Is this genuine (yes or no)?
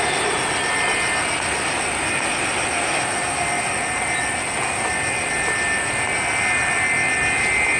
yes